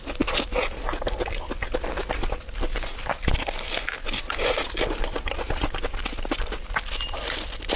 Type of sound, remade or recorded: recorded